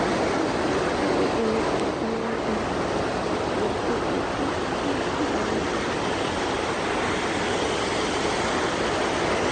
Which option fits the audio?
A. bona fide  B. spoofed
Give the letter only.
A